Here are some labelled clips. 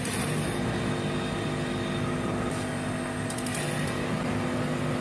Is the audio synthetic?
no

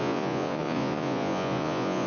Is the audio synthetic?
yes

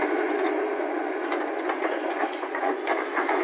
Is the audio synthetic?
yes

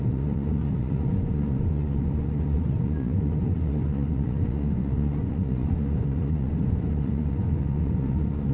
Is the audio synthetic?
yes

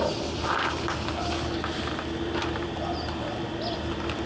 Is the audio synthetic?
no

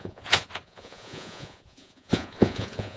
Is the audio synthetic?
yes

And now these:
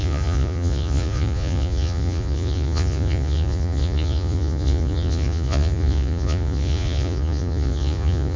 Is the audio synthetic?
yes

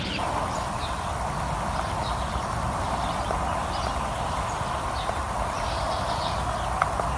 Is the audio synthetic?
no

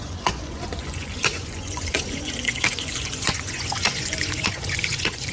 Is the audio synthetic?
yes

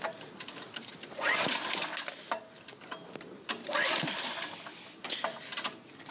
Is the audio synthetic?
no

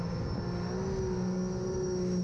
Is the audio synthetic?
no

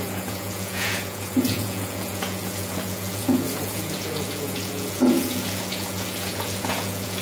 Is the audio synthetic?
yes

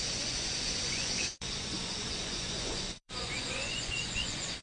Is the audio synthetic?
yes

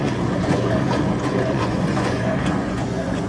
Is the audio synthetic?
yes